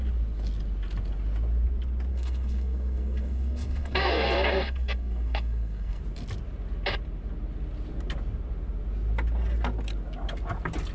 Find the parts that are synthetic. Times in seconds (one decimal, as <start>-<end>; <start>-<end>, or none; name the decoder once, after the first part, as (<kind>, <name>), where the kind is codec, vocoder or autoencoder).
2.1-6.0 (codec, SNAC)